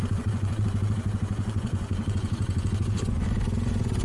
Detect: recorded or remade remade